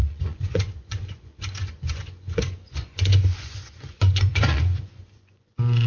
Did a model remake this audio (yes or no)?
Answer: yes